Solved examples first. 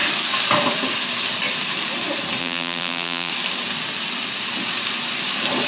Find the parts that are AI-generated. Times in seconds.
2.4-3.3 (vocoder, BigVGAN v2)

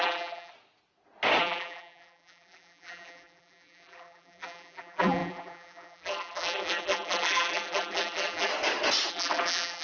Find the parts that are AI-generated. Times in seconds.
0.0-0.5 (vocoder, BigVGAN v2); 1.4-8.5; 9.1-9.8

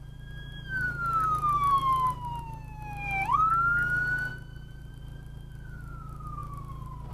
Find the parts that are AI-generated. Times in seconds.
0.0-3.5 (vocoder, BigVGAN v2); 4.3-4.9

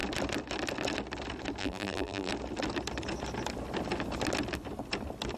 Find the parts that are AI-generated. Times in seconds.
1.6-2.3 (vocoder, BigVGAN v2)

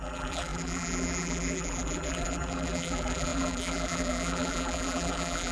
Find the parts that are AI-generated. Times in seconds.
0.0-5.5 (vocoder, BigVGAN v2)

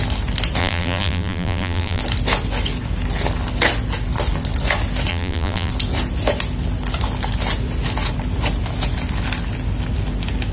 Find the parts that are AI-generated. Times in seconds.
0.6-2.0 (vocoder, BigVGAN v2); 5.1-5.7

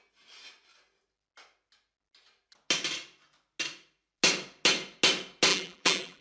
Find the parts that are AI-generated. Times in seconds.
5.5-6.2 (vocoder, BigVGAN v2)